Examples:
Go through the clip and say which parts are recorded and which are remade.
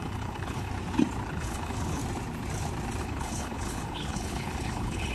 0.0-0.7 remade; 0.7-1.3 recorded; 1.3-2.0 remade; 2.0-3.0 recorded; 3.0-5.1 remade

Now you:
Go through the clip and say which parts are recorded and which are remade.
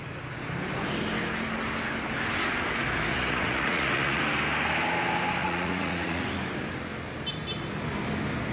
0.0-3.1 recorded; 3.1-4.2 remade; 4.2-5.4 recorded; 5.4-6.2 remade; 6.2-8.5 recorded